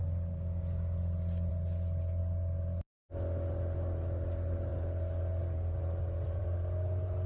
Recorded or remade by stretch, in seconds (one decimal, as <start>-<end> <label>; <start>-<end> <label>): 0.0-7.3 recorded